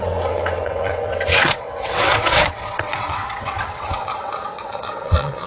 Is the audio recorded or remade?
remade